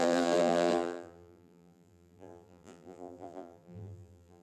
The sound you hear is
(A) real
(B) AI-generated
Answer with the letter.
B